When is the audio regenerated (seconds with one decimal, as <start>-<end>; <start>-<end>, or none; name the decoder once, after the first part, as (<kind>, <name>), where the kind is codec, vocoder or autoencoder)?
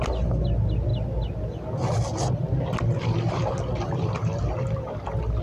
none